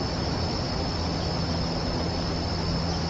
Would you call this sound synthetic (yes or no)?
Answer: no